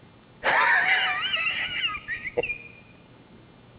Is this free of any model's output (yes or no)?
yes